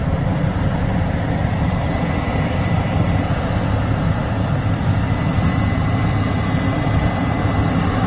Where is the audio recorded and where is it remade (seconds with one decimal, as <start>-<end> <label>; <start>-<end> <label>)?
0.0-3.0 remade; 3.0-4.2 recorded; 4.2-8.1 remade